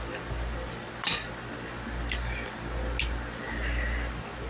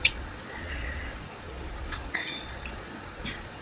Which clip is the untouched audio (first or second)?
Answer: first